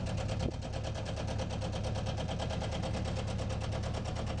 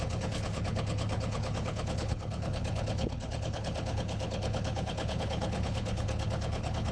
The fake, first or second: second